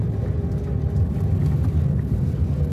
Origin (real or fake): real